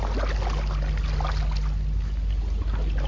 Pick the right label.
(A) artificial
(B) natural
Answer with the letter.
B